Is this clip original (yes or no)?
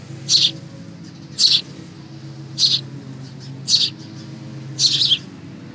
yes